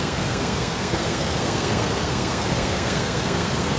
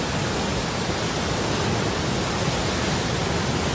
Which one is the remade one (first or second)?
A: first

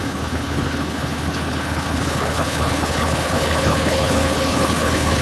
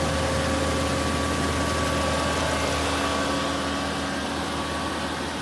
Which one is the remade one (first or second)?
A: first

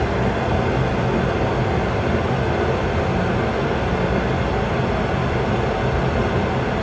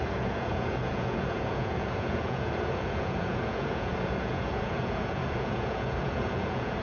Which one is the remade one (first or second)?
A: second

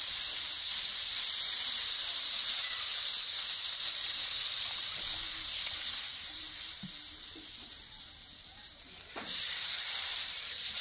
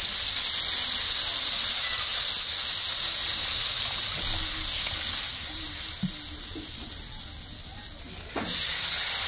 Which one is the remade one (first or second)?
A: first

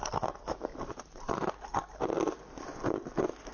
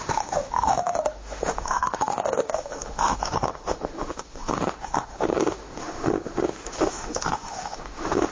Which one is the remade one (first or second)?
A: second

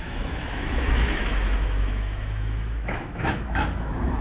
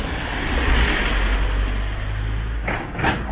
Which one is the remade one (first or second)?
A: first